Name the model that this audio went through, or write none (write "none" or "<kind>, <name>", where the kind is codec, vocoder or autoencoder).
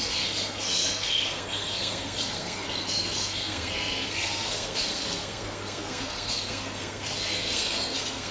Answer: codec, SNAC